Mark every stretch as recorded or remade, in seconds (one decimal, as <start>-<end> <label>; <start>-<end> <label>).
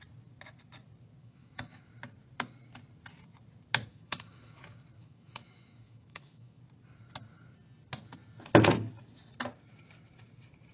0.0-1.2 recorded; 1.2-1.8 remade; 1.8-3.9 recorded; 3.9-4.6 remade; 4.6-5.0 recorded; 5.0-6.6 remade; 6.6-10.7 recorded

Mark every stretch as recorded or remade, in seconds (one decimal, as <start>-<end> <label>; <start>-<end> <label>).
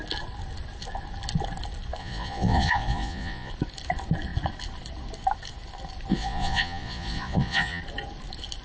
0.0-2.0 recorded; 2.0-3.5 remade; 3.5-6.1 recorded; 6.1-7.8 remade; 7.8-8.6 recorded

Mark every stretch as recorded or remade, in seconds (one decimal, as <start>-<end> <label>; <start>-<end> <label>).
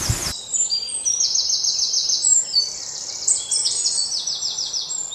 0.0-2.0 recorded; 2.0-5.1 remade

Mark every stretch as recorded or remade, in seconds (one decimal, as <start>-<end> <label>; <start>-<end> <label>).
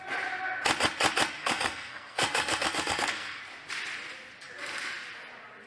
0.0-1.4 recorded; 1.4-3.4 remade; 3.4-5.7 recorded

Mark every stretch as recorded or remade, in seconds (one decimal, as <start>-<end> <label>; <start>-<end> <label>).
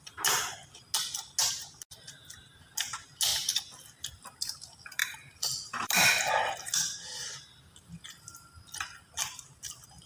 0.0-5.0 recorded; 5.0-7.3 remade; 7.3-10.1 recorded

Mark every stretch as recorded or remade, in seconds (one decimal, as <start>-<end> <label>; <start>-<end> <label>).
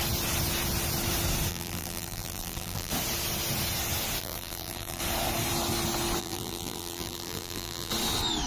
0.0-1.5 recorded; 1.5-2.9 remade; 2.9-4.2 recorded; 4.2-5.0 remade; 5.0-6.2 recorded; 6.2-7.9 remade; 7.9-8.5 recorded